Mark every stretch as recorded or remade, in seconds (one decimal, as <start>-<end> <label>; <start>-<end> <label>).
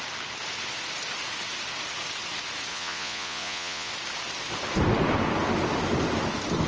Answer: 0.0-2.7 recorded; 2.7-3.9 remade; 3.9-6.7 recorded